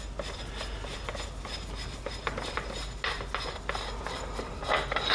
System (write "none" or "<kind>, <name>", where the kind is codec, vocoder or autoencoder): none